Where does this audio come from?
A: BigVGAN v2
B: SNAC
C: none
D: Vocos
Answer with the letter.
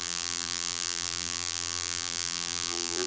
A